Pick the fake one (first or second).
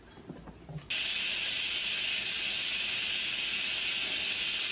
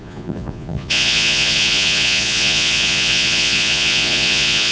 second